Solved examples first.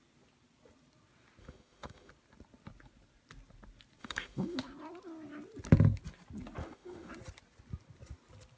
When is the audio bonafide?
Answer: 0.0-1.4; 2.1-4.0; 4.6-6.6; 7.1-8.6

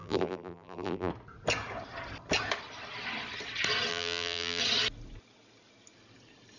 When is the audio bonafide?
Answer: 1.1-3.9; 4.6-6.6

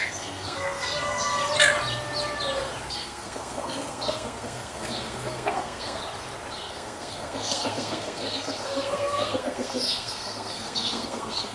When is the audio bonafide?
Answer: 1.3-2.9; 6.0-6.5

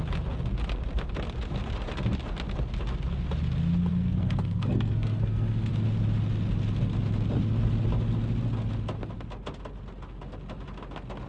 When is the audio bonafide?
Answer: 0.0-3.9; 5.7-11.3

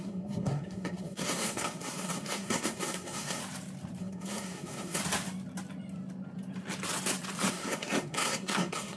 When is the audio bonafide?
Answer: 3.4-4.0; 5.0-7.5

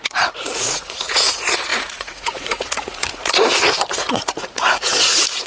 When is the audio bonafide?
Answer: none

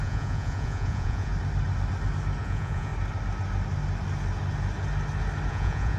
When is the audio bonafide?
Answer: 1.3-2.4; 2.9-5.5